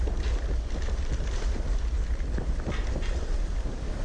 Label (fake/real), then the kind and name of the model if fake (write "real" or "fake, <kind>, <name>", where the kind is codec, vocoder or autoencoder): real